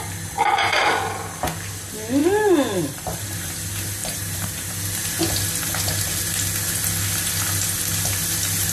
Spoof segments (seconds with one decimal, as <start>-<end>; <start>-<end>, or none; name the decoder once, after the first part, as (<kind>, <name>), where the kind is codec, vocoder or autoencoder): 2.2-3.5 (vocoder, BigVGAN v2); 4.0-4.7